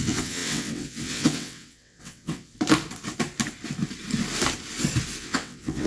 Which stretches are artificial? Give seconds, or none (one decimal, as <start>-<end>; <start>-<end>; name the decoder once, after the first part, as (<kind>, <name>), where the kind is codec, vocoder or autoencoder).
0.0-2.5 (vocoder, WaveNeXt); 5.2-5.9